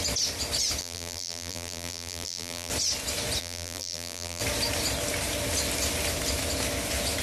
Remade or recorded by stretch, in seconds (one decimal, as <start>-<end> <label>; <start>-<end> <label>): 0.0-0.8 recorded; 0.8-2.7 remade; 2.7-3.4 recorded; 3.4-4.4 remade; 4.4-7.2 recorded